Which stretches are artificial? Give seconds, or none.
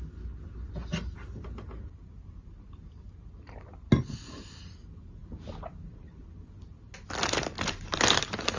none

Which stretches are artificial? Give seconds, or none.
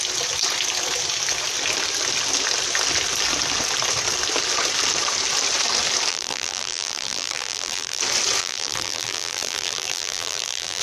6.1-8.0 (vocoder, BigVGAN v2); 8.4-10.8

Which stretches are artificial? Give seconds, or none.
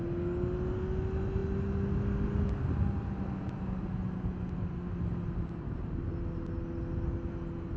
none